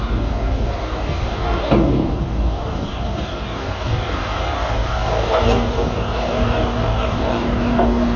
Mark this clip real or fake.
fake